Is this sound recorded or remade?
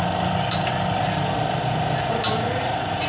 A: recorded